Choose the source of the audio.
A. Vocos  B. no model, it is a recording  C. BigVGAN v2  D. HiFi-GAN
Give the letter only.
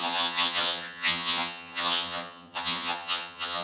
D